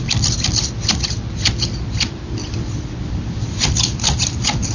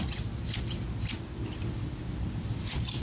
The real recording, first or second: second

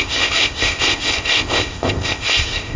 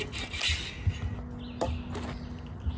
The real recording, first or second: second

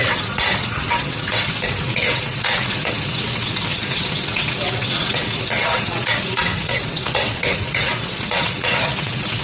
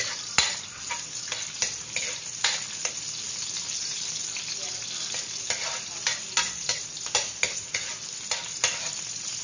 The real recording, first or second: second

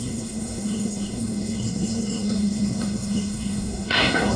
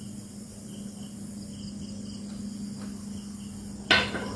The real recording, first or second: second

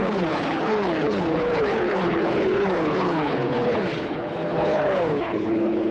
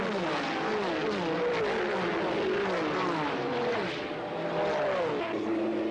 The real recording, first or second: second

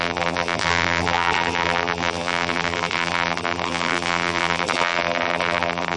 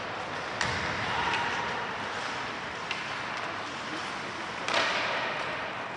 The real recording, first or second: second